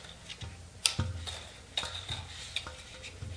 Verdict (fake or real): real